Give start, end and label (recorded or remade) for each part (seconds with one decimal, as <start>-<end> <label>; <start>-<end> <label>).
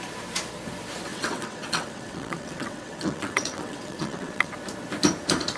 0.0-1.1 recorded; 1.1-4.5 remade; 4.5-5.6 recorded